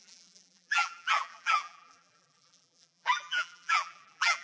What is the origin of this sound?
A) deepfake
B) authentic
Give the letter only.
A